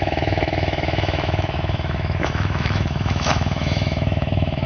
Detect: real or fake fake